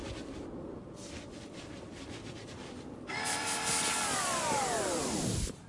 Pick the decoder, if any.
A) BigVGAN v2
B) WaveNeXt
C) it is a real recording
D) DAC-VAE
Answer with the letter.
A